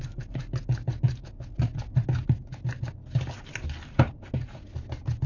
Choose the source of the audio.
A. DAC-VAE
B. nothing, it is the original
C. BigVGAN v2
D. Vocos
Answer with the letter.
B